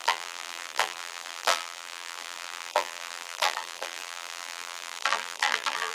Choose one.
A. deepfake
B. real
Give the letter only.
A